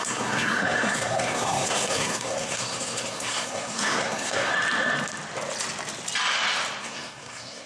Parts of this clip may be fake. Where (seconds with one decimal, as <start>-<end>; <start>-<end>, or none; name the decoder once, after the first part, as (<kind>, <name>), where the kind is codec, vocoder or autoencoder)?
0.0-4.5 (codec, SNAC); 6.8-7.7